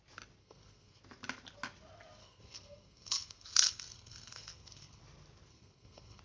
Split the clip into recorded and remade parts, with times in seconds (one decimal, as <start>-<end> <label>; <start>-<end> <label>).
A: 0.0-0.4 recorded; 0.4-1.0 remade; 1.0-2.2 recorded; 2.2-5.0 remade; 5.0-5.5 recorded; 5.5-6.2 remade